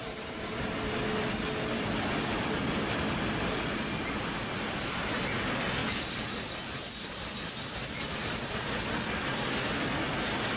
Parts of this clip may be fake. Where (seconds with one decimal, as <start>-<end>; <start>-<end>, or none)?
none